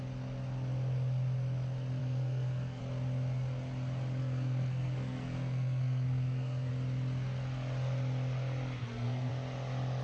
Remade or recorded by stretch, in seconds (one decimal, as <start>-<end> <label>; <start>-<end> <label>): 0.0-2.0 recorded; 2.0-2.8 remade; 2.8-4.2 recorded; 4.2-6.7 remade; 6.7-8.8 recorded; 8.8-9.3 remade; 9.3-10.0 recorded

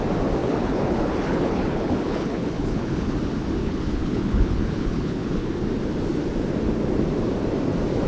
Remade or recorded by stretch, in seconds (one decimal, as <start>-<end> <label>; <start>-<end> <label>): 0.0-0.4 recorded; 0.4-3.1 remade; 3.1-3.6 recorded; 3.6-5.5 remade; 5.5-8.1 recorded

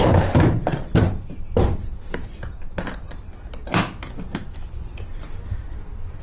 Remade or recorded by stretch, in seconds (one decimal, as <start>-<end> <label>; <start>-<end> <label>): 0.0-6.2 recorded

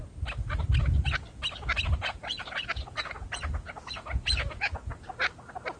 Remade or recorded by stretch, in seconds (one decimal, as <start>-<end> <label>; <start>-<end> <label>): 0.0-2.0 recorded; 2.0-5.1 remade; 5.1-5.8 recorded

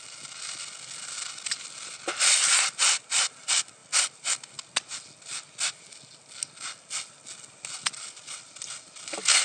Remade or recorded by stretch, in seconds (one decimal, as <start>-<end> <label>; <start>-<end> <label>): 0.0-9.4 recorded